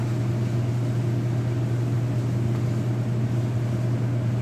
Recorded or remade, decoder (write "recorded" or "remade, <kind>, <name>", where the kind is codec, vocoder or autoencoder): recorded